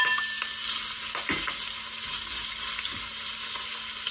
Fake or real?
real